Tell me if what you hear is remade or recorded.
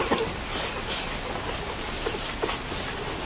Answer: recorded